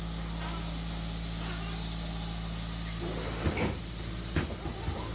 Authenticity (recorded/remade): recorded